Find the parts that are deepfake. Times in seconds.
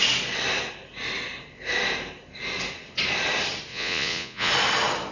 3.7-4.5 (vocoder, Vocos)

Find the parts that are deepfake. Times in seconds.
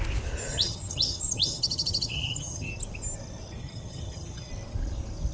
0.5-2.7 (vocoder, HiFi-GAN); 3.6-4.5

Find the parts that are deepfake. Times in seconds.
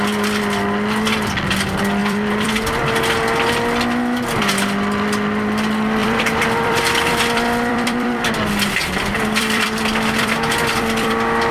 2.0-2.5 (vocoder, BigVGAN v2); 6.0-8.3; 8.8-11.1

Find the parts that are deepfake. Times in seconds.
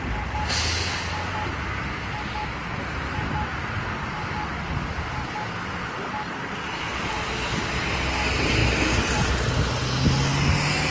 none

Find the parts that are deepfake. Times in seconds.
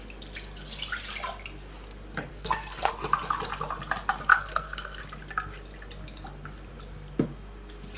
2.3-2.9 (codec, SNAC); 4.3-5.0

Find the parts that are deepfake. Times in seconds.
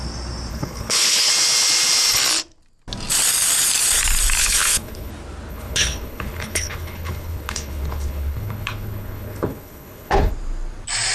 0.5-1.3 (codec, HILCodec); 4.4-5.1; 5.5-10.3